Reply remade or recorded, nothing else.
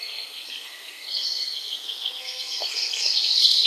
remade